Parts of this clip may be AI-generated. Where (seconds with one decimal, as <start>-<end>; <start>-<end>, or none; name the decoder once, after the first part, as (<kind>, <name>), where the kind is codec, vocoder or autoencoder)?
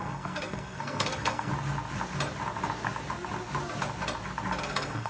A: 0.0-1.5 (codec, SNAC); 4.6-5.1